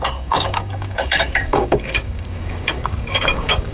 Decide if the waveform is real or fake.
fake